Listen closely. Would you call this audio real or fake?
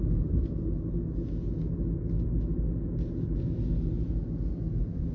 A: real